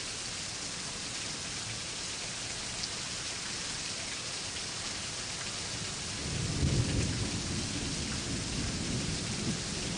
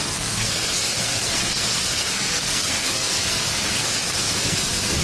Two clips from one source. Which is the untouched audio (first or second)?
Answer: first